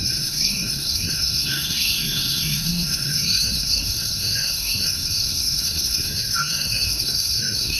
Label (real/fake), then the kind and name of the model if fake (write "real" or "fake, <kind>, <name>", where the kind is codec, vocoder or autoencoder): fake, codec, SNAC